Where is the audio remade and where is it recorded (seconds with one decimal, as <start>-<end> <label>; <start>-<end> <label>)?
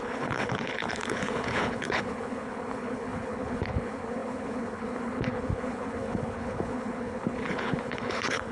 0.0-8.5 remade